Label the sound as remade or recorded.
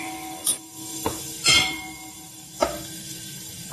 remade